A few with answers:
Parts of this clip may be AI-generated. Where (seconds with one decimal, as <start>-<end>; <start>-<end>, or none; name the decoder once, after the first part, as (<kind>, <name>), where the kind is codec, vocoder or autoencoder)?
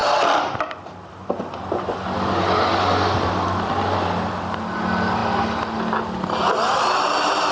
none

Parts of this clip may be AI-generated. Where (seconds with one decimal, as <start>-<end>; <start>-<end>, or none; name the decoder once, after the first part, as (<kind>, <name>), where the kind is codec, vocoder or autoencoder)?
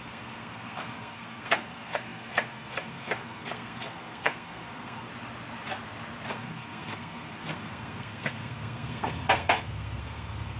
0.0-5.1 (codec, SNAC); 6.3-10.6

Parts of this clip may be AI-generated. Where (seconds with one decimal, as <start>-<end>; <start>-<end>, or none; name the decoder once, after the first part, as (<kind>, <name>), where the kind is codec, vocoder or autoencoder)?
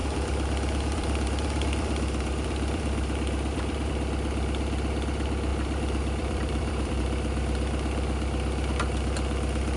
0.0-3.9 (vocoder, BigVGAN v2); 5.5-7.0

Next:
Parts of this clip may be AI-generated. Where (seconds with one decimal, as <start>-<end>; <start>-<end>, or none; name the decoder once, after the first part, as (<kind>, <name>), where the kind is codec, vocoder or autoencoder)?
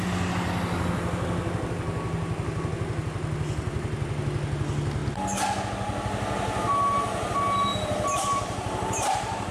7.7-9.5 (vocoder, BigVGAN v2)